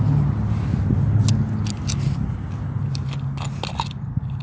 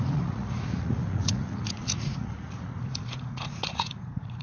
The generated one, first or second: second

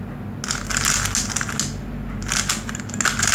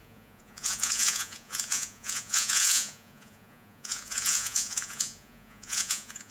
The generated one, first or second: second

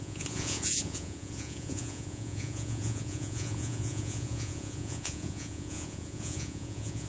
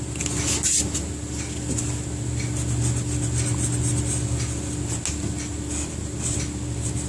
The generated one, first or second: first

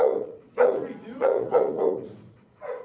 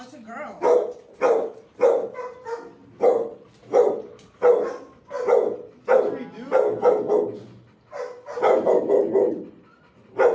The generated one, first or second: first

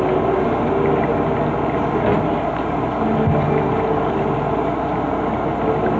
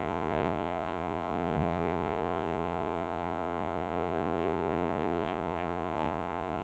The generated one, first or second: second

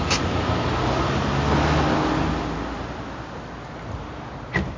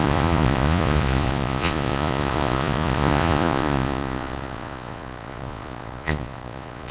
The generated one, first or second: second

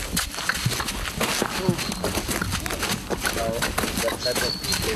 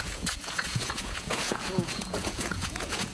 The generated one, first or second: second